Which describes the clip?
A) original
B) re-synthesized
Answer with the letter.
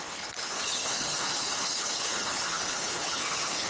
B